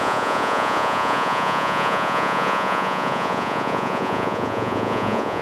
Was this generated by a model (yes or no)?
yes